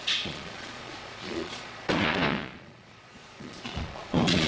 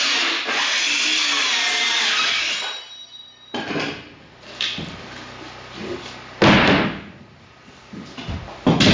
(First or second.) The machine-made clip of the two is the first